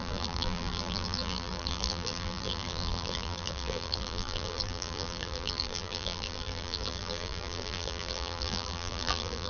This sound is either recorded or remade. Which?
remade